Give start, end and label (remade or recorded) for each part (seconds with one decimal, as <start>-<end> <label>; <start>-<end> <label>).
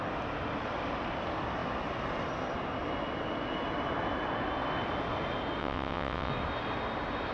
0.0-5.6 recorded; 5.6-6.3 remade; 6.3-7.3 recorded